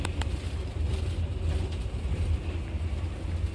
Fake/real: real